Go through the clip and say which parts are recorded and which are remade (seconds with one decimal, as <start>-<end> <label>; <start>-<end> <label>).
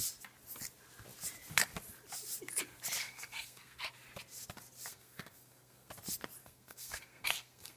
0.0-3.0 recorded; 3.0-3.9 remade; 3.9-4.9 recorded; 4.9-5.9 remade; 5.9-6.4 recorded; 6.4-7.8 remade